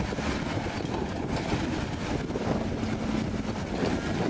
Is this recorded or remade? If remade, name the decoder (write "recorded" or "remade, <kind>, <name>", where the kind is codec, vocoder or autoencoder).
recorded